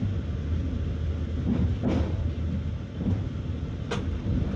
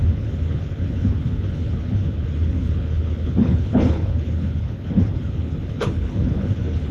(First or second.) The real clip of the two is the first